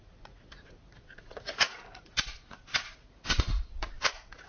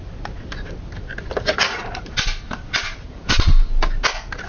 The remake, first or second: first